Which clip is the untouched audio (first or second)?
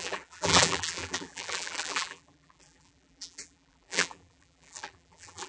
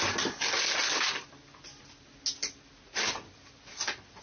second